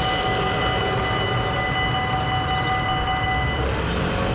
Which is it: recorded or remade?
recorded